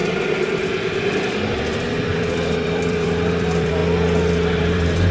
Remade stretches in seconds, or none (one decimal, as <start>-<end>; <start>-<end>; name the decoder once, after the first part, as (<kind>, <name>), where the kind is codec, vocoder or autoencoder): 0.0-3.8 (vocoder, BigVGAN v2); 4.6-5.1